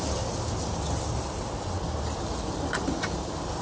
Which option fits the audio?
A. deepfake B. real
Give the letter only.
B